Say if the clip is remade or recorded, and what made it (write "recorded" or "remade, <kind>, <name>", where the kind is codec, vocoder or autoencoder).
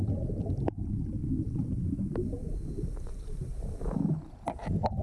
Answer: recorded